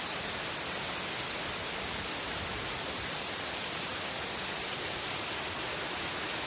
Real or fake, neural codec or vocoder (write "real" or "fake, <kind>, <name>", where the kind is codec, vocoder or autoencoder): real